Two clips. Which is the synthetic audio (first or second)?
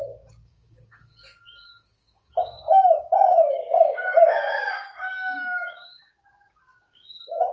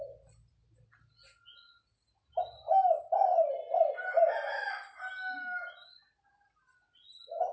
first